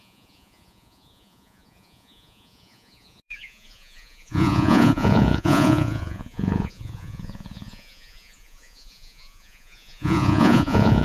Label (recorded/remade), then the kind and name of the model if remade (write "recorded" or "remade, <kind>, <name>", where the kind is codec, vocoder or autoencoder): remade, vocoder, Vocos